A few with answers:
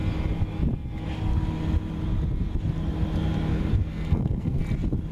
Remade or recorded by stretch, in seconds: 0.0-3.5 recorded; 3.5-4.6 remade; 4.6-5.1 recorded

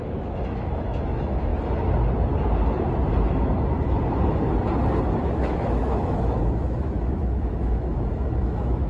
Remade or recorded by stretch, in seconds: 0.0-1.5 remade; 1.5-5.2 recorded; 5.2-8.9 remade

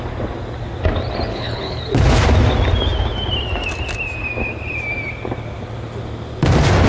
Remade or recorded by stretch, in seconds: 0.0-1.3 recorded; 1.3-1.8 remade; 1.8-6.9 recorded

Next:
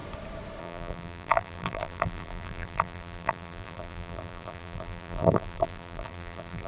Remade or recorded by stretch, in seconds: 0.0-0.6 recorded; 0.6-6.7 remade

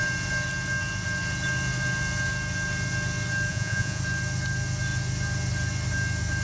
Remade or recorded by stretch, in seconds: 0.0-3.5 recorded; 3.5-4.0 remade; 4.0-6.4 recorded